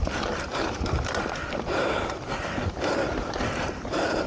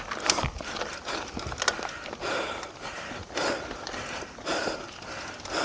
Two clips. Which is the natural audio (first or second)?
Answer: second